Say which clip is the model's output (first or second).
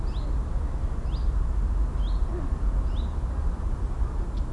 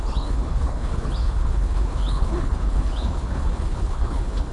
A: second